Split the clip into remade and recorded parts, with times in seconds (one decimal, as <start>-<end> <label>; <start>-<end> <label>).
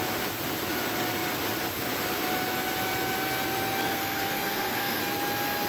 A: 0.0-3.8 recorded; 3.8-5.0 remade; 5.0-5.7 recorded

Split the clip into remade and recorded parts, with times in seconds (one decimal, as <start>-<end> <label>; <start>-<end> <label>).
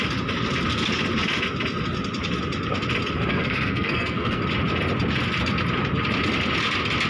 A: 0.0-3.3 recorded; 3.3-4.4 remade; 4.4-7.1 recorded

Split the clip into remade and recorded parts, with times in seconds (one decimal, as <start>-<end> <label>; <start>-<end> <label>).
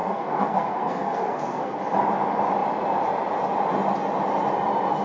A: 0.0-1.8 remade; 1.8-5.0 recorded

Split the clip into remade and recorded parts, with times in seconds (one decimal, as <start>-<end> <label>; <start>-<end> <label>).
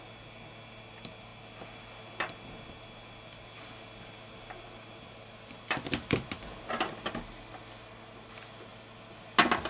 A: 0.0-9.7 recorded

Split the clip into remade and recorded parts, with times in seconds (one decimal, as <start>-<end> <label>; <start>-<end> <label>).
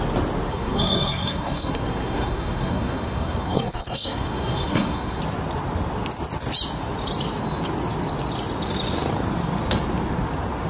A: 0.0-0.5 recorded; 0.5-5.2 remade; 5.2-10.7 recorded